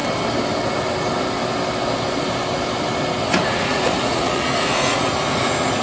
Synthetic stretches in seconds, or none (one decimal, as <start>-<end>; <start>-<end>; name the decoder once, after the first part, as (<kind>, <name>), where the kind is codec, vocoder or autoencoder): 3.4-5.8 (vocoder, Vocos)